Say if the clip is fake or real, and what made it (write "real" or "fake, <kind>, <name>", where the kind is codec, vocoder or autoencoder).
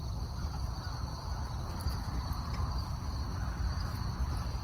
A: real